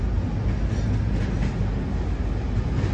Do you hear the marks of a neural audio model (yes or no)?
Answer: no